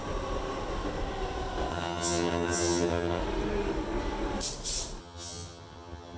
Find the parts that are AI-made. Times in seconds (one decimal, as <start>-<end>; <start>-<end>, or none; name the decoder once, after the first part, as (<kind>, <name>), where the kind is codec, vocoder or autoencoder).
1.7-3.2 (vocoder, HiFi-GAN); 5.0-6.2